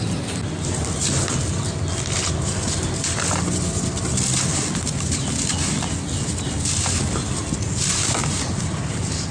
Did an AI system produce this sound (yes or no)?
no